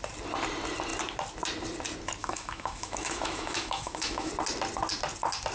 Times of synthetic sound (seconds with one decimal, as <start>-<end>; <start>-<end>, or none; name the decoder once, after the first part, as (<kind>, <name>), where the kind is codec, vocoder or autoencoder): 2.2-4.3 (autoencoder, DAC-VAE)